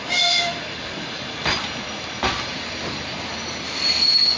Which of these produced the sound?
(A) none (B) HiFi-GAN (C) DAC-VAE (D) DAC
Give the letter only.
A